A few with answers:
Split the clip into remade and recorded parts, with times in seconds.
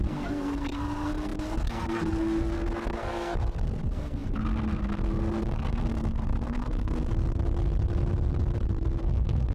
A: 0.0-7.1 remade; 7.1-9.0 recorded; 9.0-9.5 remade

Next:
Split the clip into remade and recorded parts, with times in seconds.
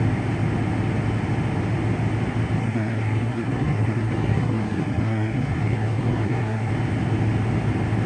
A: 0.0-2.6 recorded; 2.6-6.7 remade; 6.7-8.1 recorded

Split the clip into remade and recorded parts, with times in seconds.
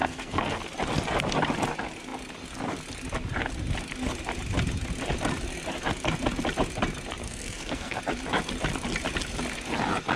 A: 0.0-0.6 remade; 0.6-7.2 recorded; 7.2-8.0 remade; 8.0-10.2 recorded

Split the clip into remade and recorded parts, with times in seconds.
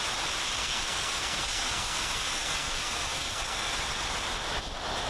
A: 0.0-0.6 recorded; 0.6-3.7 remade; 3.7-5.1 recorded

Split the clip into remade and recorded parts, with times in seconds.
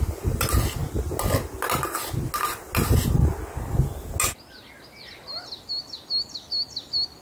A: 0.0-7.2 recorded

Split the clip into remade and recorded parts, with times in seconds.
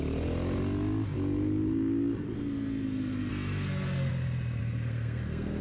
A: 0.0-3.3 recorded; 3.3-4.1 remade; 4.1-4.6 recorded; 4.6-5.6 remade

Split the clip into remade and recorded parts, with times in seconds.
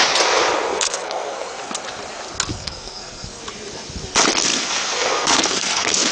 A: 0.0-0.7 recorded; 0.7-1.7 remade; 1.7-2.5 recorded; 2.5-3.4 remade; 3.4-4.5 recorded; 4.5-6.1 remade